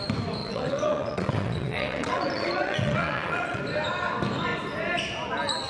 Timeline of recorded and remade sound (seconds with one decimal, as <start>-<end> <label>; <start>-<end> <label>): 0.0-0.4 recorded; 0.4-3.6 remade; 3.6-5.7 recorded